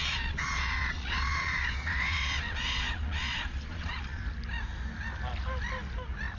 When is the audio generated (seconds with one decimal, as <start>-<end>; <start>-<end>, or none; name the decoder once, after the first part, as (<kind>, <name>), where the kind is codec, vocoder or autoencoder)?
0.0-4.2 (vocoder, Vocos)